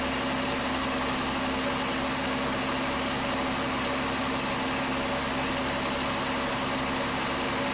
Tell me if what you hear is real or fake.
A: real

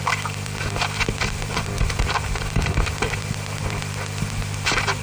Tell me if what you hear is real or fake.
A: fake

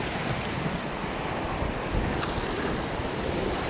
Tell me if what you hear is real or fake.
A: real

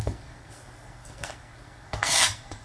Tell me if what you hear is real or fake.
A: fake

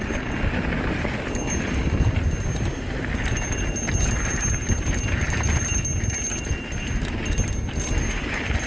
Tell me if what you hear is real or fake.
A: real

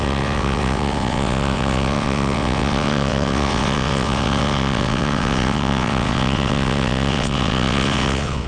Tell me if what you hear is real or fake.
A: fake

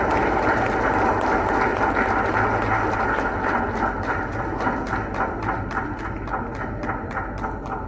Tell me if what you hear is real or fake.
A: real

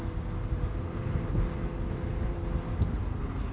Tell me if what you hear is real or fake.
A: real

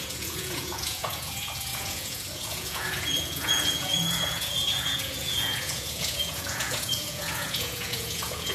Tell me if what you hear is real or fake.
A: fake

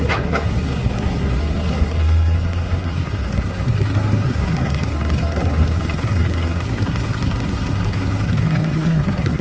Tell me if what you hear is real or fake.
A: fake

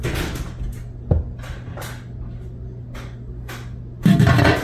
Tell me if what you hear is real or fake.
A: real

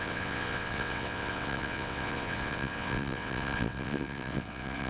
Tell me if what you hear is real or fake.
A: fake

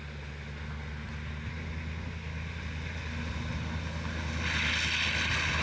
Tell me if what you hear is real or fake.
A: real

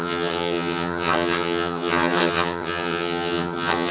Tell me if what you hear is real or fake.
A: fake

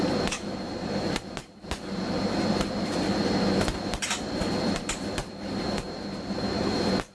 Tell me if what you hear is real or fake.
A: fake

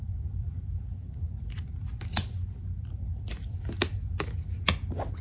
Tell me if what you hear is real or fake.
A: real